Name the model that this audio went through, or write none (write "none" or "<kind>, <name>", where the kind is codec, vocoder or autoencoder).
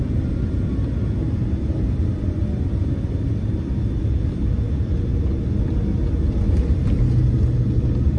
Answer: none